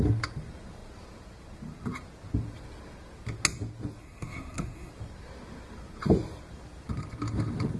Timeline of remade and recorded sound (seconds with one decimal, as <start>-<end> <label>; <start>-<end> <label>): 0.0-4.0 recorded; 4.0-4.9 remade; 4.9-7.8 recorded